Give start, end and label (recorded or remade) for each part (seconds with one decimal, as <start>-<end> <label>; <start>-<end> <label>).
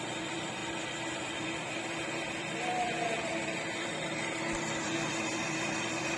0.0-0.6 remade; 0.6-1.4 recorded; 1.4-6.2 remade